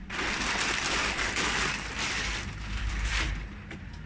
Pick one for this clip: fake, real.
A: fake